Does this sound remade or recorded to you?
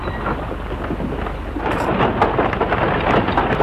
recorded